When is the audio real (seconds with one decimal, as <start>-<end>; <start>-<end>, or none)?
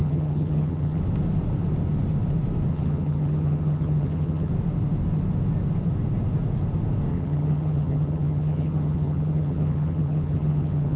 1.0-2.7; 4.5-7.1